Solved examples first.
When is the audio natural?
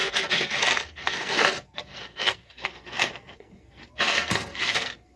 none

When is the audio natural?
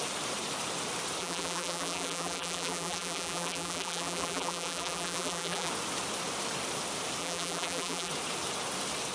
0.0-1.2; 5.7-7.2; 8.1-9.1